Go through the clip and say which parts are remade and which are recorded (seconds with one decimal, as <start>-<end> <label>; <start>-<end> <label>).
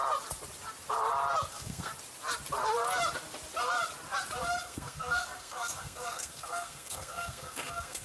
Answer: 0.0-1.5 recorded; 1.5-1.9 remade; 1.9-4.6 recorded; 4.6-8.0 remade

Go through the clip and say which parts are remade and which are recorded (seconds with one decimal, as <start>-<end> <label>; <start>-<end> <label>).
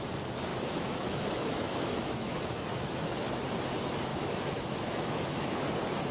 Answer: 0.0-0.5 recorded; 0.5-3.4 remade; 3.4-4.1 recorded; 4.1-5.5 remade; 5.5-6.1 recorded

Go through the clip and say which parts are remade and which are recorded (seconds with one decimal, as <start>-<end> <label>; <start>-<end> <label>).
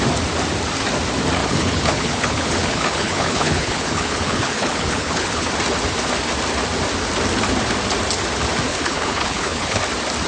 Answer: 0.0-1.4 recorded; 1.4-5.5 remade; 5.5-8.7 recorded; 8.7-9.8 remade; 9.8-10.3 recorded